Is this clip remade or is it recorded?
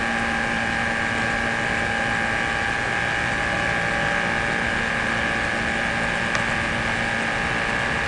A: recorded